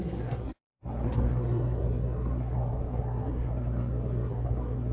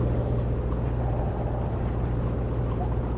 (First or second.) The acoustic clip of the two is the second